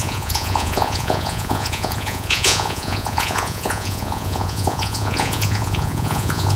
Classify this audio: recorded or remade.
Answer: remade